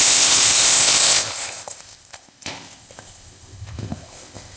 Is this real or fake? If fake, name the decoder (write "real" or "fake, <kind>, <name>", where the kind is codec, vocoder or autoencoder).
fake, codec, ZipCodec